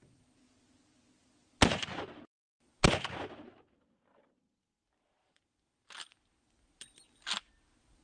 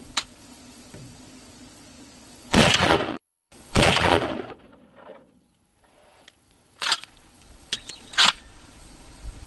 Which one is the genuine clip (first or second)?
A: first